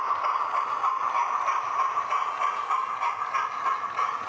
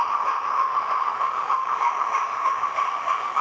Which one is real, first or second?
first